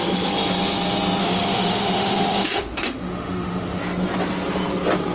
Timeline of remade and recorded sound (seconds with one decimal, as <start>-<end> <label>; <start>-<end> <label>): 0.0-1.2 recorded; 1.2-3.8 remade; 3.8-5.1 recorded